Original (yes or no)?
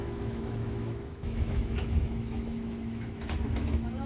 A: no